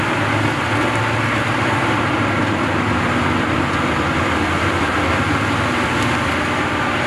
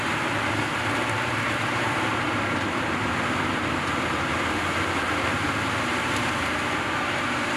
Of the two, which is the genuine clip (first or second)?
first